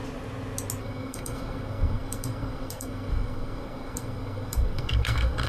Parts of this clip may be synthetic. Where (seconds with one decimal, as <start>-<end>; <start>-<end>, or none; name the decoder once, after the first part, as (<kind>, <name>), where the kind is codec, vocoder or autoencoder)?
0.8-5.5 (codec, SNAC)

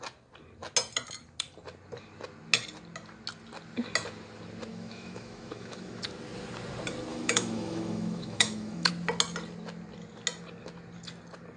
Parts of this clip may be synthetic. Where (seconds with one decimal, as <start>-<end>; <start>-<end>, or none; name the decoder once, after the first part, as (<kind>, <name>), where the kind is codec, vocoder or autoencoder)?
4.7-6.0 (autoencoder, DAC-VAE); 7.1-8.9

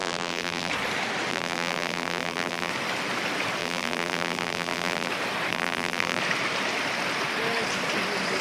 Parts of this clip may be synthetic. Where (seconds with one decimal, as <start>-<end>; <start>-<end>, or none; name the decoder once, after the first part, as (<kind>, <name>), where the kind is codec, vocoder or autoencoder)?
0.0-0.7 (vocoder, BigVGAN v2); 1.3-2.7; 3.6-5.1; 5.5-6.2